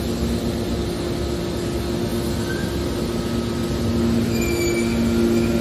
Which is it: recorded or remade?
recorded